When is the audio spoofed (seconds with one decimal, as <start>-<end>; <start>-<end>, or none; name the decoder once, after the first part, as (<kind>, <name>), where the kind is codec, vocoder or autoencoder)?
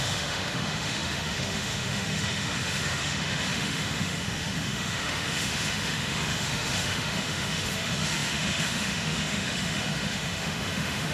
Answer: 0.0-11.1 (autoencoder, DAC-VAE)